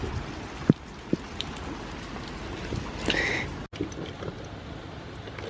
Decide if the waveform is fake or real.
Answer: real